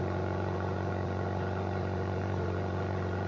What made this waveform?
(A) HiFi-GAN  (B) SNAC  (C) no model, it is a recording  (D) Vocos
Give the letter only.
D